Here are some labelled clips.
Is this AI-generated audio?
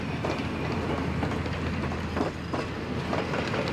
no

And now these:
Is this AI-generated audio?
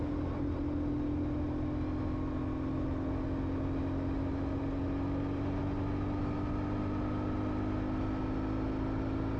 no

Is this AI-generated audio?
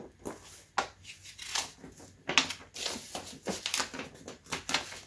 no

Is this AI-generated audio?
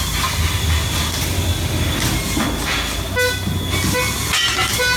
no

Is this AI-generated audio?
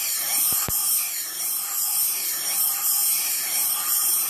yes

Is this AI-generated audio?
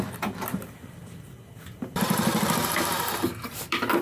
yes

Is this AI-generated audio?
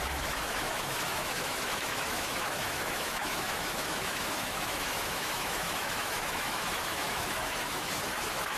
yes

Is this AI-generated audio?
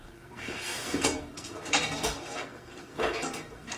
yes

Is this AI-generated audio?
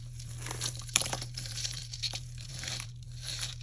yes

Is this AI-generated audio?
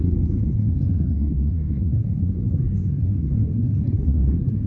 yes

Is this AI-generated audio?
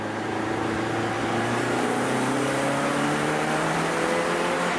yes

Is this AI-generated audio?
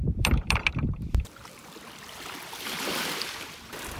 yes